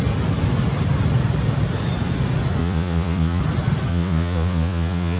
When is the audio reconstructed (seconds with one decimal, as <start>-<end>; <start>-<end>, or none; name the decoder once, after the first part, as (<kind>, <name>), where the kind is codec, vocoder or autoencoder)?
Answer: 2.6-3.4 (vocoder, Vocos); 3.9-5.2